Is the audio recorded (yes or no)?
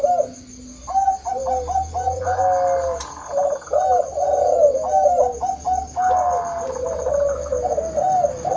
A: yes